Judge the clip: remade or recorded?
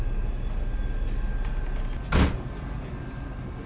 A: recorded